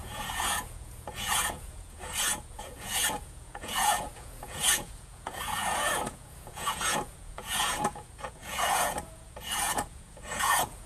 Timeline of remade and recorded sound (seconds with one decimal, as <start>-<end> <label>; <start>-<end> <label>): 0.0-10.9 remade